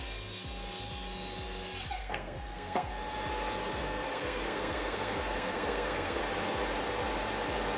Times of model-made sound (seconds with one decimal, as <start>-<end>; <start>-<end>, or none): 2.0-2.9; 3.8-6.2